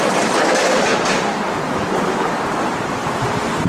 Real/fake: real